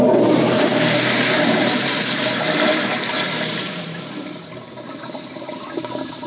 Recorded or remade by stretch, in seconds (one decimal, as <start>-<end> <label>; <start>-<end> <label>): 0.0-0.7 remade; 0.7-1.4 recorded; 1.4-6.3 remade